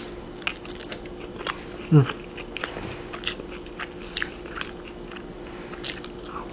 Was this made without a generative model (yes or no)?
yes